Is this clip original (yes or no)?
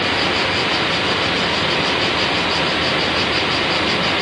yes